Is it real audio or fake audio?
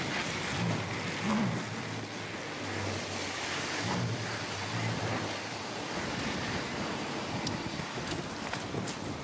real